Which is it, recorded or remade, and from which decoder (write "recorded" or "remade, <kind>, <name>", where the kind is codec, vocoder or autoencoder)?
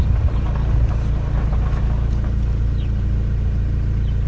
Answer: recorded